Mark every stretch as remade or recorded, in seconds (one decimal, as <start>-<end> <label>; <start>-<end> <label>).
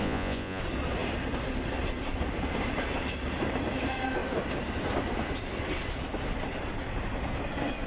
0.0-0.6 remade; 0.6-7.9 recorded